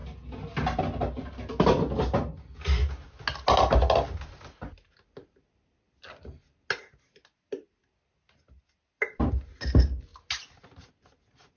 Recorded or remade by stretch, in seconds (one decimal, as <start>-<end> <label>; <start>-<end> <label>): 0.0-11.6 recorded